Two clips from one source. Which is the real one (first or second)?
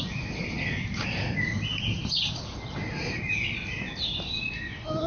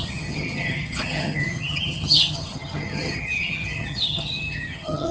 first